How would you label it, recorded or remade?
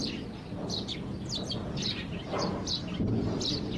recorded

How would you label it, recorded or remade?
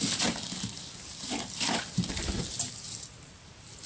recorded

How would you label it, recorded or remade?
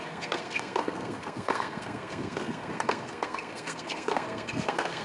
remade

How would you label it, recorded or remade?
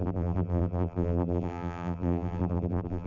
remade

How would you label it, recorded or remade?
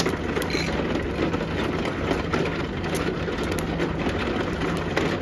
recorded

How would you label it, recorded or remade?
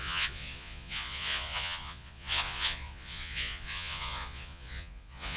remade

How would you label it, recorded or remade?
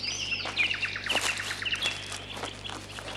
recorded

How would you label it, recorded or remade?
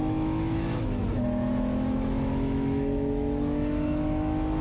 remade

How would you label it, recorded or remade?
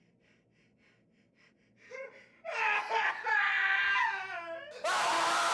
recorded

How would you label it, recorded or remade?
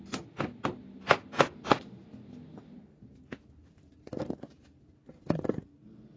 recorded